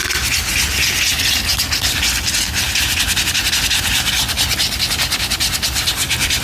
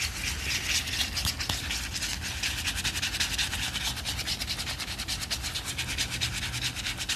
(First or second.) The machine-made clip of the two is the second